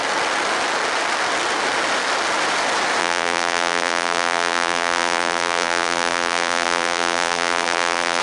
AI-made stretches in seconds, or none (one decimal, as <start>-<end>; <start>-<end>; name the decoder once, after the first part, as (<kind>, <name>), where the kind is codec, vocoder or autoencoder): 3.0-8.2 (vocoder, BigVGAN v2)